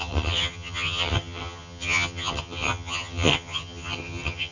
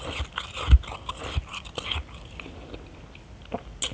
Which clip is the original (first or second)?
second